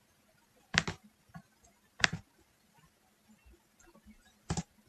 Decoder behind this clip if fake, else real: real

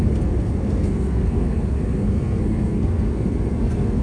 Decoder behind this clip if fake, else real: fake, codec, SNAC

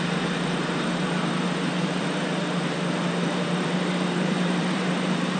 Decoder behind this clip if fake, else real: fake, vocoder, BigVGAN v2